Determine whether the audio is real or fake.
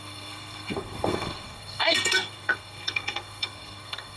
fake